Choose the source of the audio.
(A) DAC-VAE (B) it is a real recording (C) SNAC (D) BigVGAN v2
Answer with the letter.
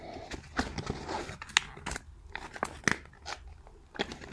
B